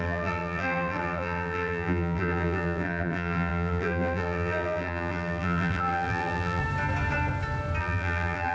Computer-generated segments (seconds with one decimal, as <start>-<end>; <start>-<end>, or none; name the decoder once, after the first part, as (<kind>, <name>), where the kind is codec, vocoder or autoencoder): 0.0-6.6 (vocoder, BigVGAN v2); 7.8-8.5